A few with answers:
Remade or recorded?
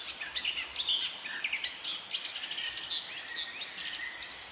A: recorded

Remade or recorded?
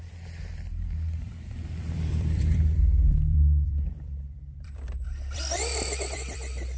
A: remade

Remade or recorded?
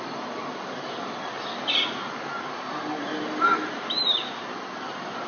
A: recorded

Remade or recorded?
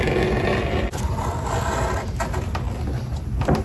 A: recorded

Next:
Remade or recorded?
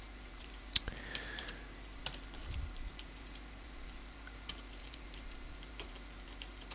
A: remade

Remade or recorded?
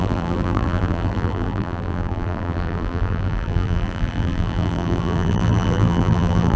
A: remade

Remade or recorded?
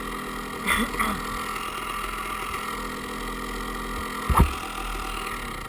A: recorded